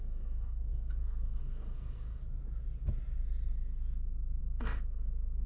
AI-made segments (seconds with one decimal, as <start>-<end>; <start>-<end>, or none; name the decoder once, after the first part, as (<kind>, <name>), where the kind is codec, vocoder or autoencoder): 0.0-2.2 (codec, SNAC); 4.4-5.5